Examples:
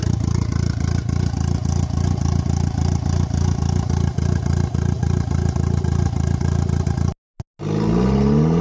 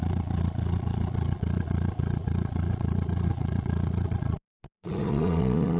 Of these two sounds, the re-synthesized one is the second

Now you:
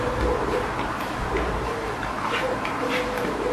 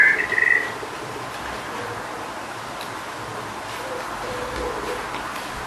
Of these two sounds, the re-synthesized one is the first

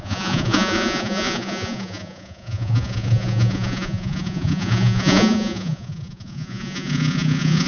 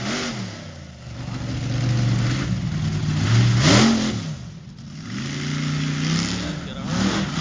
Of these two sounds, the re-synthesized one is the first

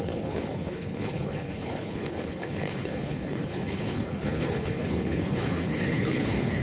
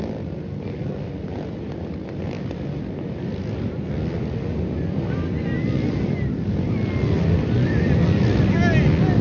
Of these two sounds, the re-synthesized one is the first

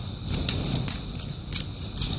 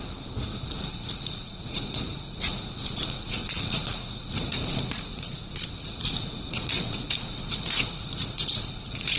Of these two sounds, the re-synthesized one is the second